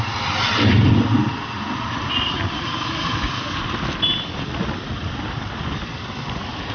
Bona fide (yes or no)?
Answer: yes